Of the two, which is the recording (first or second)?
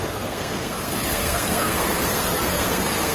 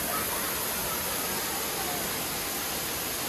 second